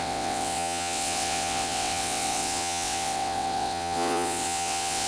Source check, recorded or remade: remade